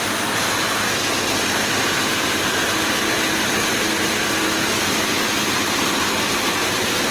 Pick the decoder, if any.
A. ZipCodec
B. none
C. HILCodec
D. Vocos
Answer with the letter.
B